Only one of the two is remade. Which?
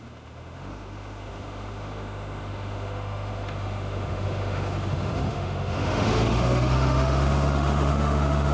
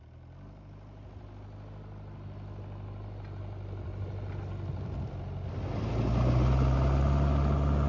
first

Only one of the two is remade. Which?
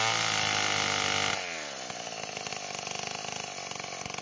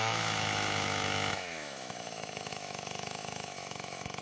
second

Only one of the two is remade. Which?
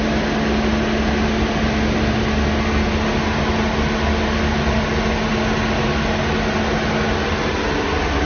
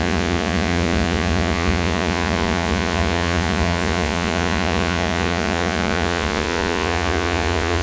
second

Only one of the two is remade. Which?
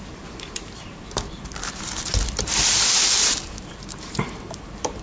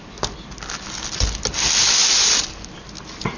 first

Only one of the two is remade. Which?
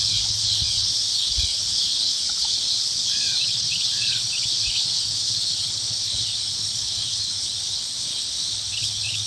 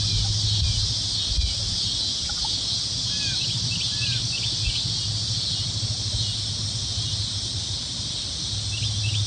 first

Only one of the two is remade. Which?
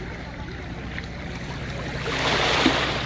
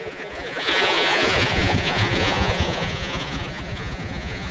second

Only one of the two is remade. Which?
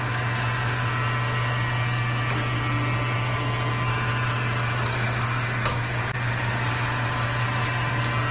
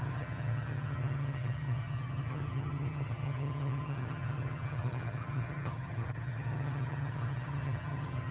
second